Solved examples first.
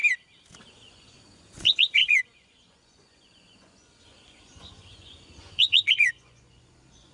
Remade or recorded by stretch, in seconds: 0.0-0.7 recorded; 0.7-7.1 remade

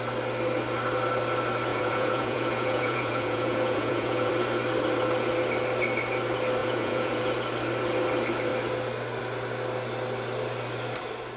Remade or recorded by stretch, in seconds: 0.0-1.7 recorded; 1.7-4.3 remade; 4.3-6.6 recorded; 6.6-7.2 remade; 7.2-11.4 recorded

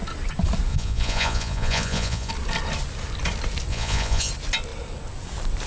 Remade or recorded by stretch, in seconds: 0.0-0.7 recorded; 0.7-2.3 remade; 2.3-3.7 recorded; 3.7-4.3 remade; 4.3-5.7 recorded

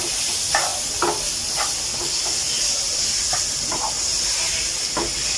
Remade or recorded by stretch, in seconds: 0.0-5.4 recorded